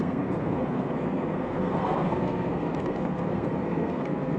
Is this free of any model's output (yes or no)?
no